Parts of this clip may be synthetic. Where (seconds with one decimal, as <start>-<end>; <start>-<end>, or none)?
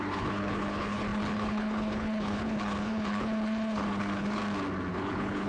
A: 0.0-4.4; 4.9-5.5